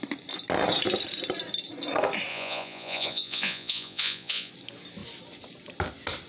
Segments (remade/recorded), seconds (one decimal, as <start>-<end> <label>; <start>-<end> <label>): 0.0-2.3 recorded; 2.3-4.5 remade; 4.5-6.3 recorded